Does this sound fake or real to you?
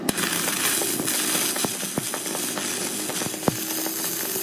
real